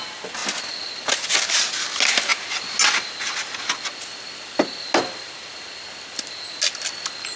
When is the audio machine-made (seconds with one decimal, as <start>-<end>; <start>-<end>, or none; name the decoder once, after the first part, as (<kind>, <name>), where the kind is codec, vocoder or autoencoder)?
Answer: none